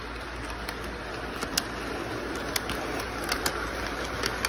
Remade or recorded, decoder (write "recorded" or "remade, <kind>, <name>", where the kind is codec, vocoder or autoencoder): recorded